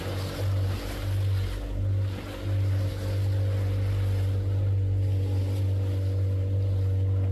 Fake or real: real